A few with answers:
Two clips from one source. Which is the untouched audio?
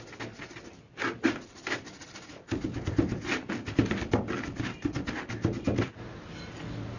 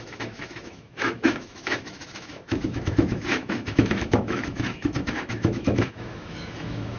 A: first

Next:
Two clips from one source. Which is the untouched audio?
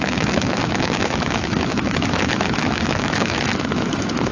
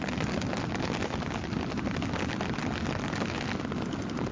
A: second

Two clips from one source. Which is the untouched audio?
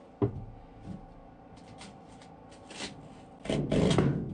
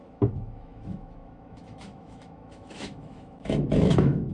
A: first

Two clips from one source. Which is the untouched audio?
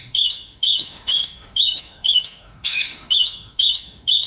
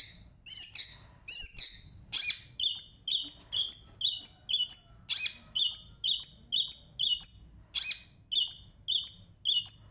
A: second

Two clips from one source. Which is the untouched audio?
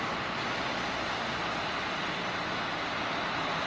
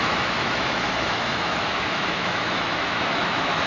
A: first